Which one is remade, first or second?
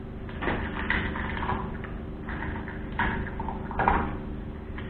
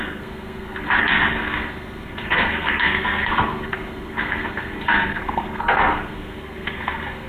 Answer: second